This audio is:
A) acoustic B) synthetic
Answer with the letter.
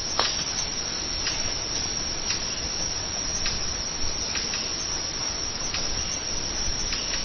A